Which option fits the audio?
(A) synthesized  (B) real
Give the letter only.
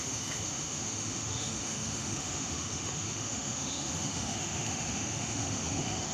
A